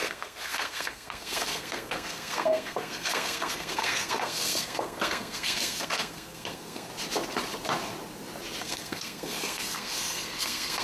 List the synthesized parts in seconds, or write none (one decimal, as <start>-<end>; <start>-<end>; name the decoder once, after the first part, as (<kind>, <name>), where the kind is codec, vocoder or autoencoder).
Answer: 0.0-6.9 (codec, SNAC); 8.6-10.8